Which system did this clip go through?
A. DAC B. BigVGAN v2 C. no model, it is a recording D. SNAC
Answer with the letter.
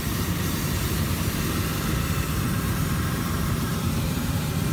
B